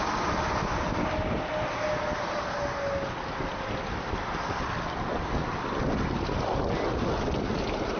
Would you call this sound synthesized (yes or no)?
no